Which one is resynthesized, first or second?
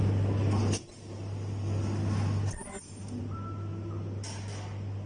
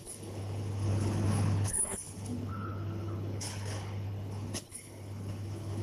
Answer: second